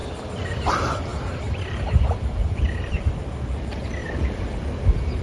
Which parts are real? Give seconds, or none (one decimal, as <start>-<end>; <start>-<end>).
0.0-1.1; 3.1-4.0; 4.6-5.2